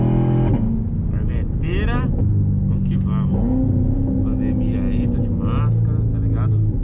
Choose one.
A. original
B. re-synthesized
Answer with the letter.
A